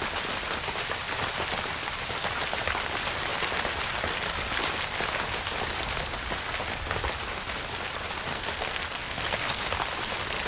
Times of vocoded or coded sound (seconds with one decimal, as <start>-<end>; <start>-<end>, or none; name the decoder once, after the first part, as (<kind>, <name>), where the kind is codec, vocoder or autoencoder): 8.3-9.6 (codec, SNAC)

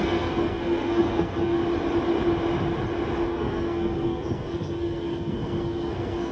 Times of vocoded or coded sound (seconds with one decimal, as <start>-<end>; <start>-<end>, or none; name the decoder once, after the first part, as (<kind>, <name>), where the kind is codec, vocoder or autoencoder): 0.0-1.6 (codec, SNAC); 3.3-6.3

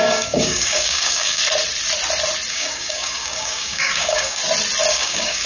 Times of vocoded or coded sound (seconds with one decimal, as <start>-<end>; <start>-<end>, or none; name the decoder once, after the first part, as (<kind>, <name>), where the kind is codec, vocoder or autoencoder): 0.0-1.4 (codec, DAC); 2.5-4.4; 4.9-5.5

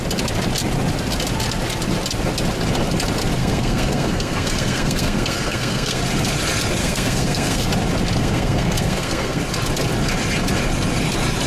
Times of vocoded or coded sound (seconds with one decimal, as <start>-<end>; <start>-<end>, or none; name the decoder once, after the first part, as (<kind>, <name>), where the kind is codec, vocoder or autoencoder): 3.4-6.0 (codec, SNAC); 6.8-7.7; 8.2-9.4

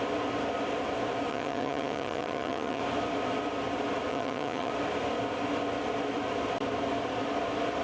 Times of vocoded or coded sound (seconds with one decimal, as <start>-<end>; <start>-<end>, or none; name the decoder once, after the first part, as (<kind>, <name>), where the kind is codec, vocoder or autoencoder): 1.3-2.8 (vocoder, HiFi-GAN); 4.1-4.7

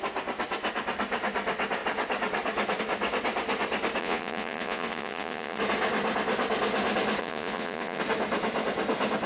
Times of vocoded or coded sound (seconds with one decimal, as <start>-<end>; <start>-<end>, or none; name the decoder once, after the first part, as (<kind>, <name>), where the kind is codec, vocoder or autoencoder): 4.0-5.6 (vocoder, Vocos); 7.2-8.0

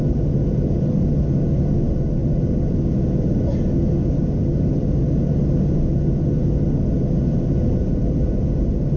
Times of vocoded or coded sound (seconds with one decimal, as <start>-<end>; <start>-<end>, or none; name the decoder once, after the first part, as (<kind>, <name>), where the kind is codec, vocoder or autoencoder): none